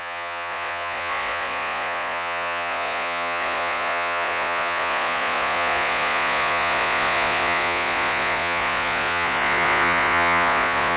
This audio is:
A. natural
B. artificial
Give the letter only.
B